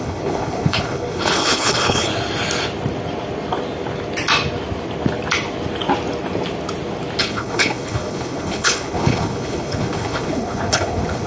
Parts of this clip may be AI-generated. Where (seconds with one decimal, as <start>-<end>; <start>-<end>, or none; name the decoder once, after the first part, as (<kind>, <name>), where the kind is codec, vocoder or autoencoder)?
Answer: 0.0-2.1 (codec, HILCodec); 7.2-11.3